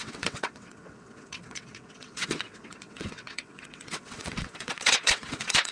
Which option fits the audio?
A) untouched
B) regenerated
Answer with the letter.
B